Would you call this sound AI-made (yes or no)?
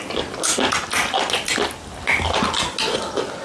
no